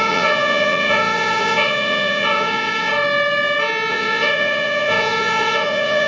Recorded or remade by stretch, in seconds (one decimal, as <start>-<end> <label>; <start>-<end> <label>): 0.0-2.9 remade; 2.9-3.9 recorded; 3.9-6.1 remade